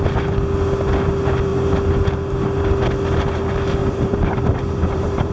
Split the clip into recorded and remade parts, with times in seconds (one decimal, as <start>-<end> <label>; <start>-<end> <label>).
0.0-3.8 recorded; 3.8-5.3 remade